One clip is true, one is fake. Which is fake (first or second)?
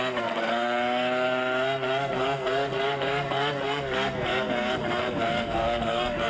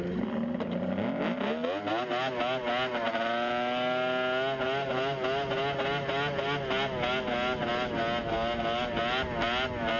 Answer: first